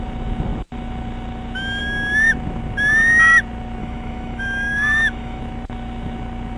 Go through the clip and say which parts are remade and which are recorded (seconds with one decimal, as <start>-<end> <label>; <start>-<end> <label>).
0.0-3.8 recorded; 3.8-5.4 remade; 5.4-6.6 recorded